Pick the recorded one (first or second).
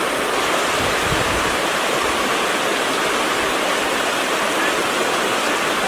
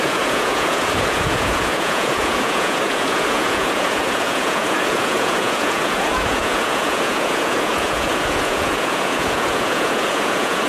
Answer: first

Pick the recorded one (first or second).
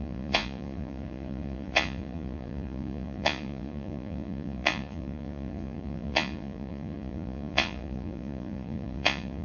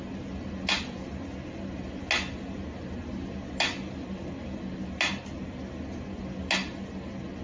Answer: second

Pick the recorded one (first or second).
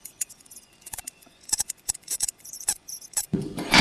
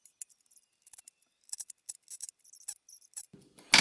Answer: second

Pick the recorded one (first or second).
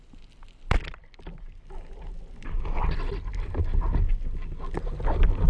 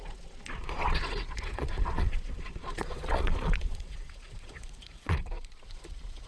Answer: first